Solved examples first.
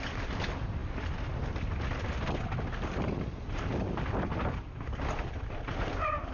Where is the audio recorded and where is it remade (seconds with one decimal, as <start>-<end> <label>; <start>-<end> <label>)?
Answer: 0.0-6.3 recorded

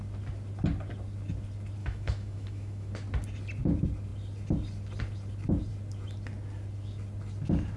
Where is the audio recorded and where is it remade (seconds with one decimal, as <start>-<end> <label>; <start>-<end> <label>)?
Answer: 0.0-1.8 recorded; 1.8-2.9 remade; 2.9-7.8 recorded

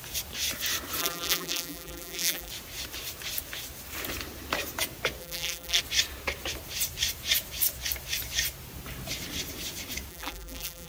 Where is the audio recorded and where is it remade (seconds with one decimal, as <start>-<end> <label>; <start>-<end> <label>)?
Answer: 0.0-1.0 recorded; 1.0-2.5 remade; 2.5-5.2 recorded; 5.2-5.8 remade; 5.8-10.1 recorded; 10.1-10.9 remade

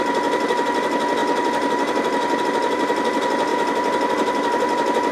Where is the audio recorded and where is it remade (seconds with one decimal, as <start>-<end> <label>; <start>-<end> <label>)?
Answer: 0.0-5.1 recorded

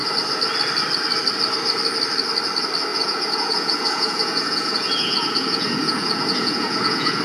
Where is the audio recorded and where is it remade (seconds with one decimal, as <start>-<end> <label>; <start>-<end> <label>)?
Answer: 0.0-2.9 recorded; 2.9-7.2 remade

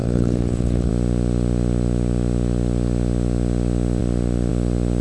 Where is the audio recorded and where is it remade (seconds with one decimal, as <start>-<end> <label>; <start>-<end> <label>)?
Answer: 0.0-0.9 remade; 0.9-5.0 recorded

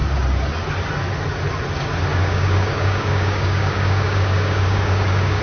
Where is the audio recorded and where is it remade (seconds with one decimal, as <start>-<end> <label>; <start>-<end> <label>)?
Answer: 0.0-2.1 recorded; 2.1-5.4 remade

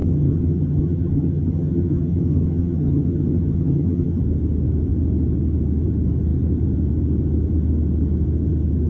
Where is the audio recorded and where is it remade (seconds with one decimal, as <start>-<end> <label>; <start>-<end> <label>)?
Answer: 0.0-4.2 remade; 4.2-8.9 recorded